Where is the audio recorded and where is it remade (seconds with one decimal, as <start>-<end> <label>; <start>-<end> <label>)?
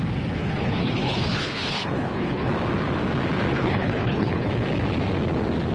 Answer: 0.0-0.4 recorded; 0.4-2.5 remade; 2.5-3.5 recorded; 3.5-4.5 remade; 4.5-5.7 recorded